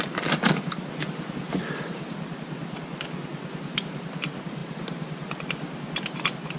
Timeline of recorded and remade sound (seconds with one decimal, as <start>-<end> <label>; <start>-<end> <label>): 0.0-6.6 recorded